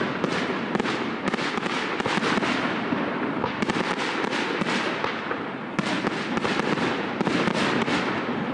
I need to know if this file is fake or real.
real